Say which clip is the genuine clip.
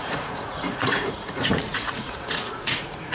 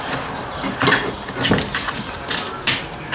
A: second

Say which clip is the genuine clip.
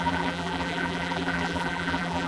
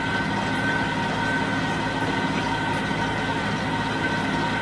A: second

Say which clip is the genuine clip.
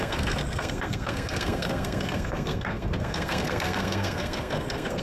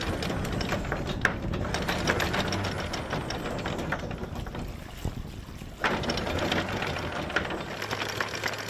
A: second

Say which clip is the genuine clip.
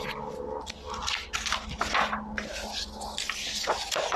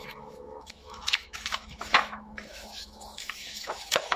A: first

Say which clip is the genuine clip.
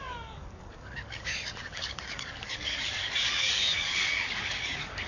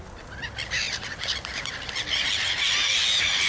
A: second